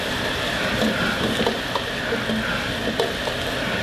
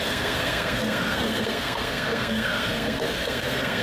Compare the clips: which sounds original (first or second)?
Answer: first